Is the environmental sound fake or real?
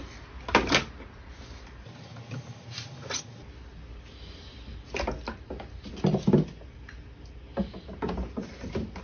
real